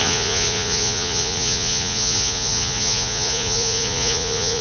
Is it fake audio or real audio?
fake